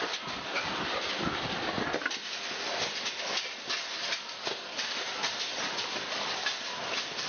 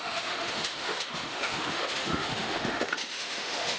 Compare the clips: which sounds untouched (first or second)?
first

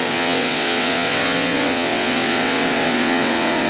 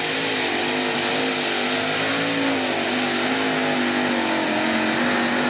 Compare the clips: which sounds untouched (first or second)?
second